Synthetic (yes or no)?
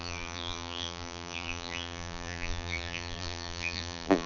yes